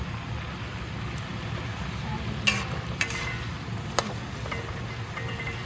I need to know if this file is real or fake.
real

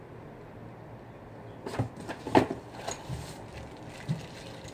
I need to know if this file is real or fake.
real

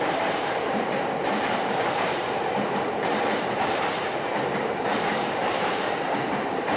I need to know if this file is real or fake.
fake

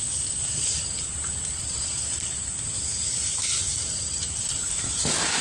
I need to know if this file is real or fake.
fake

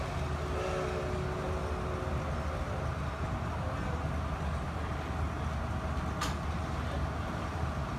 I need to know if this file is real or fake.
real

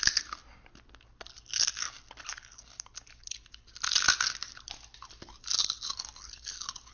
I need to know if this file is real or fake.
real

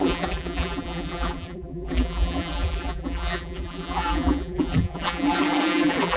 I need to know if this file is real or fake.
fake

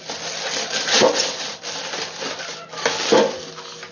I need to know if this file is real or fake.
real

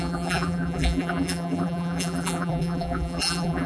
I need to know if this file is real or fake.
fake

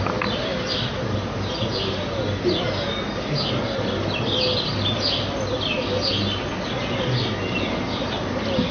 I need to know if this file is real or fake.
real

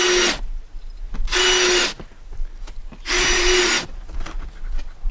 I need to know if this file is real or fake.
real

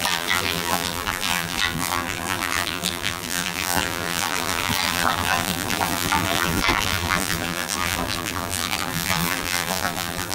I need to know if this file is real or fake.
fake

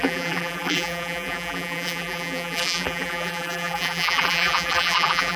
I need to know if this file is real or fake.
fake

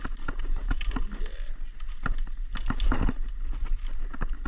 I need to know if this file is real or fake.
real